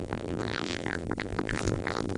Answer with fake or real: fake